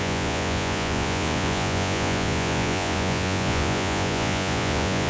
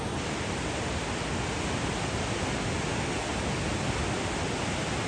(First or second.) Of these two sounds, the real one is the second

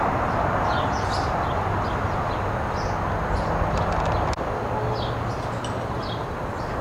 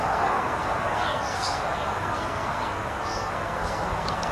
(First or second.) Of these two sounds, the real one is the first